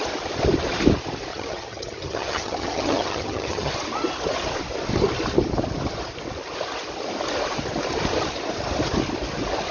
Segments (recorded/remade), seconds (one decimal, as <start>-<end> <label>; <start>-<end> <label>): 0.0-1.3 recorded; 1.3-3.7 remade; 3.7-9.7 recorded